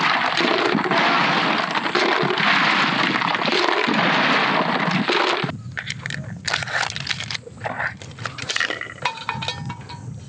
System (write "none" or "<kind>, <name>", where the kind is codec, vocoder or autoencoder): none